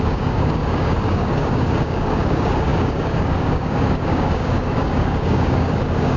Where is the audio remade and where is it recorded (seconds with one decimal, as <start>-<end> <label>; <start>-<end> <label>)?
0.0-6.2 remade

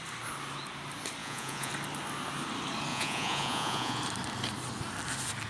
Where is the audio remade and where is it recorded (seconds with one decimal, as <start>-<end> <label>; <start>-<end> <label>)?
0.0-1.2 recorded; 1.2-1.7 remade; 1.7-2.9 recorded; 2.9-4.0 remade; 4.0-5.5 recorded

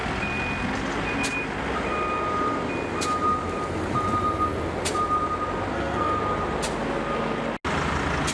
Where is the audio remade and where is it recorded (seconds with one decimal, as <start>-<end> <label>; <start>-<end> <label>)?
0.0-5.7 recorded; 5.7-6.2 remade; 6.2-8.3 recorded

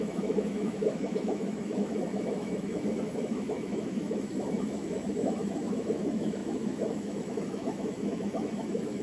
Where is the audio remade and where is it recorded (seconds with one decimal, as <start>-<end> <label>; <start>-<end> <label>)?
0.0-9.0 remade

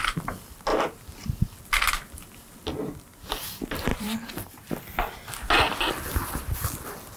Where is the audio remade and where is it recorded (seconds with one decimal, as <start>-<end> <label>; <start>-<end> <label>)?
0.0-0.7 recorded; 0.7-1.6 remade; 1.6-3.9 recorded; 3.9-4.7 remade; 4.7-7.2 recorded

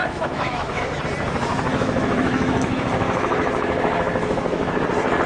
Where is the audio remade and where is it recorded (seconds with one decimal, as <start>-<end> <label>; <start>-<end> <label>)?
0.0-1.0 remade; 1.0-1.5 recorded; 1.5-4.7 remade; 4.7-5.3 recorded

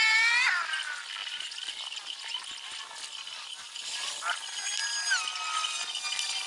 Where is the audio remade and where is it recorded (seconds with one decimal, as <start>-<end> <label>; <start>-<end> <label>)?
0.0-6.5 recorded